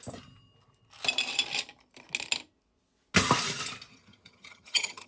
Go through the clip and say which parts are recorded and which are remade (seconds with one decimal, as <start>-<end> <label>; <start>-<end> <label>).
0.0-3.9 recorded; 3.9-5.1 remade